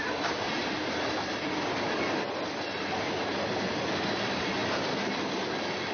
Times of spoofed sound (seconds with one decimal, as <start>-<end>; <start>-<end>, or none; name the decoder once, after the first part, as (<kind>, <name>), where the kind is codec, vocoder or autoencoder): 0.0-0.6 (vocoder, BigVGAN v2); 4.1-5.9